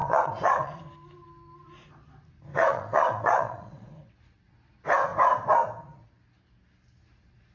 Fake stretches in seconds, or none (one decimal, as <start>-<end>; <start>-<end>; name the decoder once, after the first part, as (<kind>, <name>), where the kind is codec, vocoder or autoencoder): 0.0-0.8 (vocoder, WaveNeXt); 2.5-4.1